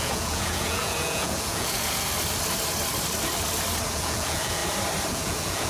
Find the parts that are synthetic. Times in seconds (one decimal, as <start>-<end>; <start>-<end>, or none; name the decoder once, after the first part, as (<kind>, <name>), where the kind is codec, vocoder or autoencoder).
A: 0.0-2.1 (vocoder, Vocos); 3.9-4.6; 5.1-5.7

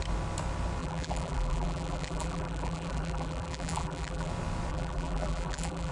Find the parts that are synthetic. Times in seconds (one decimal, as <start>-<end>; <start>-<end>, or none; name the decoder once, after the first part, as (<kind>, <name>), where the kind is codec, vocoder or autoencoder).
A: 0.8-4.3 (vocoder, BigVGAN v2); 4.7-5.9

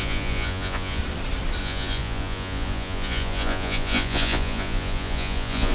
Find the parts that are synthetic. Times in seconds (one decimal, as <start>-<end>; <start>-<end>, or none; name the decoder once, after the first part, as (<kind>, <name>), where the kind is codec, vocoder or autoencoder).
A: 0.0-1.0 (vocoder, Vocos); 1.6-5.7

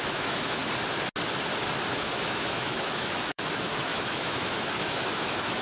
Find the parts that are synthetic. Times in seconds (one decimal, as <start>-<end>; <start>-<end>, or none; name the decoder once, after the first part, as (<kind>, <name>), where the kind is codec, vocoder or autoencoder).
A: 0.0-0.6 (autoencoder, DAC-VAE); 1.9-5.6

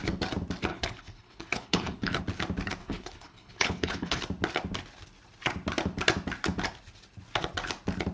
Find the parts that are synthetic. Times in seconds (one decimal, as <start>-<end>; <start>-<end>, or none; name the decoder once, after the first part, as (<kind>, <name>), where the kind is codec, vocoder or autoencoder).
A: 0.7-2.2 (codec, HILCodec); 2.8-4.2

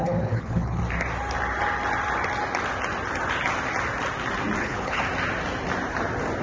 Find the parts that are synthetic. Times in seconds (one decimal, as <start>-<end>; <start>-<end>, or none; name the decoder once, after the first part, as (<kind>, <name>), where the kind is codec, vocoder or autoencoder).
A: 0.0-0.8 (codec, HILCodec); 4.6-5.0

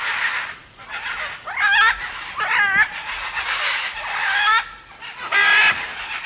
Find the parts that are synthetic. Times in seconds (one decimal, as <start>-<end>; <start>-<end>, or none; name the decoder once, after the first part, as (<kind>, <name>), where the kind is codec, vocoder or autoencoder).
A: none